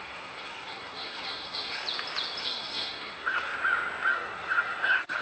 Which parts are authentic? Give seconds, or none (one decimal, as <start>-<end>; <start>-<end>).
1.8-2.4; 3.5-4.1